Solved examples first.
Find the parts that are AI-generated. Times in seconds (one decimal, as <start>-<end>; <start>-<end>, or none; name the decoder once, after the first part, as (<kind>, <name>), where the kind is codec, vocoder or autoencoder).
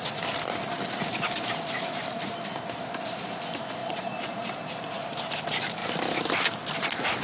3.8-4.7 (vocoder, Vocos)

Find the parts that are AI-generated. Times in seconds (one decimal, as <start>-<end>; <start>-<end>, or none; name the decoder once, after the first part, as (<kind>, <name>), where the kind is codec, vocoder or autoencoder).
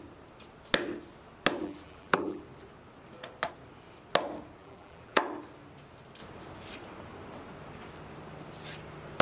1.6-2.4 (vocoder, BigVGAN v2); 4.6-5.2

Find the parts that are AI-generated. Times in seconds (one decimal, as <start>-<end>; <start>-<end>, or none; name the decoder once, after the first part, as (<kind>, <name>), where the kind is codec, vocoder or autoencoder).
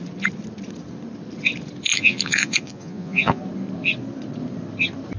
1.9-3.4 (vocoder, Vocos)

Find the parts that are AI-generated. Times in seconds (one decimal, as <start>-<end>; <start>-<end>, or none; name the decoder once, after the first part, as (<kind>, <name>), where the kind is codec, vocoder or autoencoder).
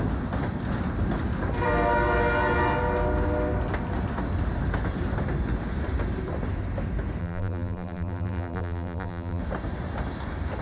7.2-9.4 (vocoder, BigVGAN v2)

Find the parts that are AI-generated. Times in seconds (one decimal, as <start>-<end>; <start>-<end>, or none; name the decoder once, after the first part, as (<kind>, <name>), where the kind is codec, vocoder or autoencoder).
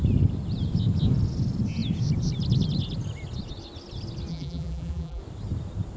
4.3-5.2 (vocoder, BigVGAN v2)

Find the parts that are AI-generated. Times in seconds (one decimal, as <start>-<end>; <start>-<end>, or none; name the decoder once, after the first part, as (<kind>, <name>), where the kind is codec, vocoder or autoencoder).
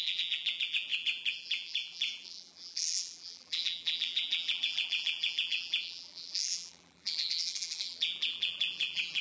0.0-9.2 (vocoder, BigVGAN v2)